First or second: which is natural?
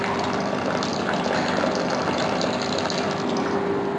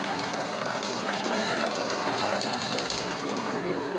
first